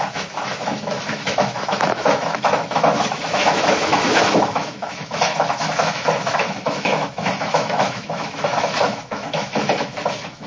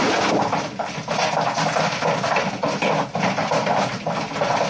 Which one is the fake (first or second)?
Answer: first